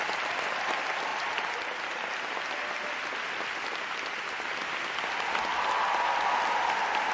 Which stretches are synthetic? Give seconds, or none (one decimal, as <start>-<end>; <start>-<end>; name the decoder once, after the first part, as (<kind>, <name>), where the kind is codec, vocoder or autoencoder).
none